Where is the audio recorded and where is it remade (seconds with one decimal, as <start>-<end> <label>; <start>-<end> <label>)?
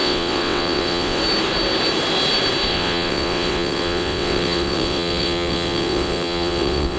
0.0-1.2 remade; 1.2-2.7 recorded; 2.7-7.0 remade